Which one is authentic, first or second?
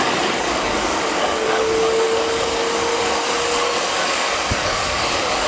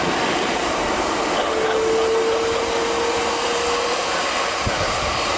second